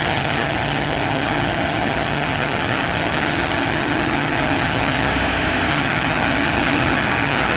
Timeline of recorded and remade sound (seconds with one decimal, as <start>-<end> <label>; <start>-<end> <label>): 0.0-5.1 remade; 5.1-5.7 recorded; 5.7-7.6 remade